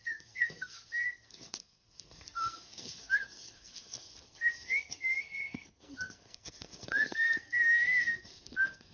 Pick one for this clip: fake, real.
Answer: fake